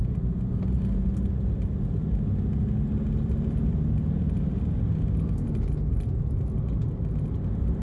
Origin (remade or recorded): recorded